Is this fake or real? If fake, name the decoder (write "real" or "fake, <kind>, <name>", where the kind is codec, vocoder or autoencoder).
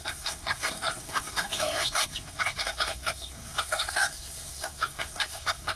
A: fake, codec, SNAC